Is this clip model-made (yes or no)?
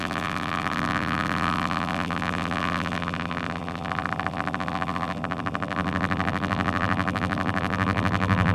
yes